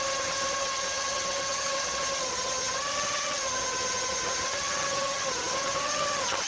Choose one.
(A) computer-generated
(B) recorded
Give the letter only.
A